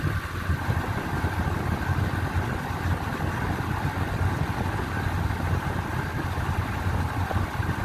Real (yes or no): yes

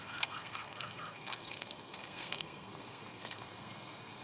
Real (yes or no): no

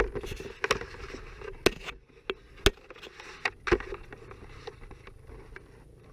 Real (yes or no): yes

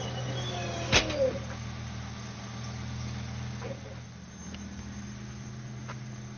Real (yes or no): yes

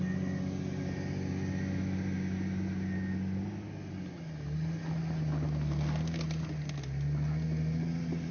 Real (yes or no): yes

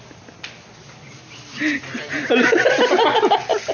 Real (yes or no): yes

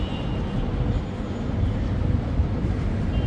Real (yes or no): yes